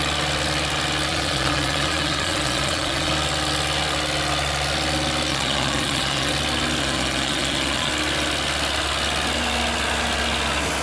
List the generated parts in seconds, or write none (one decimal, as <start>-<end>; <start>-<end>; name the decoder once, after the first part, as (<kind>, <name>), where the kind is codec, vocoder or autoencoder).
1.1-3.1 (vocoder, Vocos); 5.3-6.3; 6.8-7.9